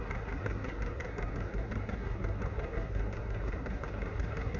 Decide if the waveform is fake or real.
fake